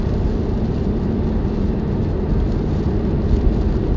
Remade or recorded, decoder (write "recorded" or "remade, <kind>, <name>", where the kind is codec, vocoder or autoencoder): recorded